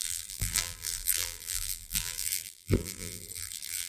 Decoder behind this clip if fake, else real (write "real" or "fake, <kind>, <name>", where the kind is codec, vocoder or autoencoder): fake, vocoder, BigVGAN v2